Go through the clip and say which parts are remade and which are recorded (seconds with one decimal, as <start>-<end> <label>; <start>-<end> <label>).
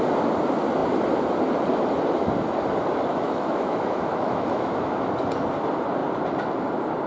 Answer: 0.0-3.1 recorded; 3.1-5.1 remade; 5.1-7.1 recorded